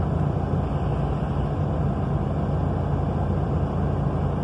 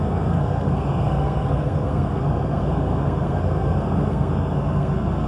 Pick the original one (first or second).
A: first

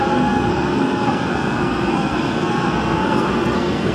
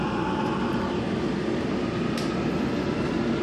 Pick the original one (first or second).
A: second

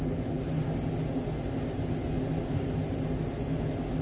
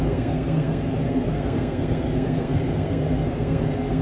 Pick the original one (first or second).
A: first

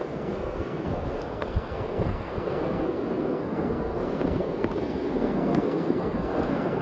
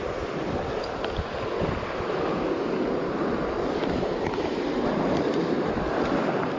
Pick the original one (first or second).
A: second